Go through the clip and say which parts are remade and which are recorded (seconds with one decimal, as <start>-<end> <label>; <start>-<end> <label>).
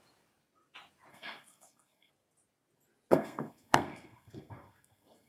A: 0.0-1.1 recorded; 1.1-2.1 remade; 2.1-3.1 recorded; 3.1-5.3 remade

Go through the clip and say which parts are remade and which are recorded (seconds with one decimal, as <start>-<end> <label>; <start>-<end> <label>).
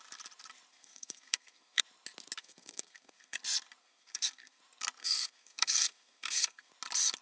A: 0.0-0.7 recorded; 0.7-1.8 remade; 1.8-2.4 recorded; 2.4-3.4 remade; 3.4-3.8 recorded; 3.8-4.6 remade; 4.6-5.0 recorded; 5.0-6.7 remade; 6.7-7.2 recorded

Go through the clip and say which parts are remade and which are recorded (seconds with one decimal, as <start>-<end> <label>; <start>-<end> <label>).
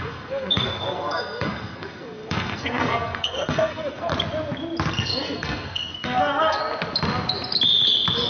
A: 0.0-4.1 remade; 4.1-4.9 recorded; 4.9-6.6 remade; 6.6-8.3 recorded